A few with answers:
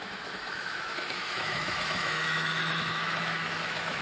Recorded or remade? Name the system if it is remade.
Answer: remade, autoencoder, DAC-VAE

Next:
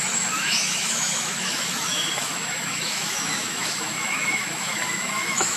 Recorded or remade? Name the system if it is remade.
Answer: remade, autoencoder, DAC-VAE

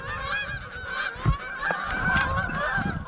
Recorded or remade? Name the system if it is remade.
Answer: recorded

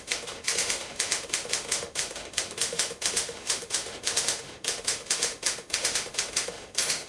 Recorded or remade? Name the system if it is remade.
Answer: remade, autoencoder, DAC-VAE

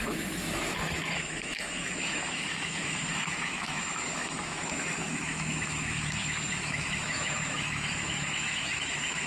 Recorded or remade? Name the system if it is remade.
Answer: remade, autoencoder, DAC-VAE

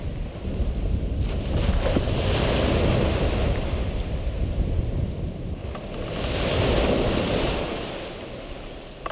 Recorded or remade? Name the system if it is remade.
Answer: recorded